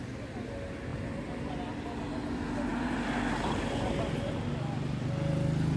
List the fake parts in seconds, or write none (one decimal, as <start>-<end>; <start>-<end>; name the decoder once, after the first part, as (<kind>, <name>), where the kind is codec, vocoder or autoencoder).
none